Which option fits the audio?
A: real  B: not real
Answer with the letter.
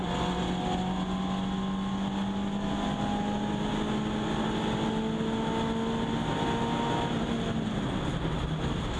A